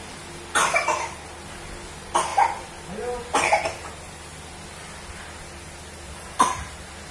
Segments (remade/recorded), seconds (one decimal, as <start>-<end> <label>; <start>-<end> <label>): 0.0-7.1 recorded